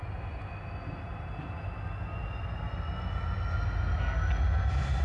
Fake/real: real